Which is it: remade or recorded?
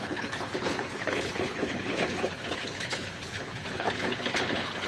remade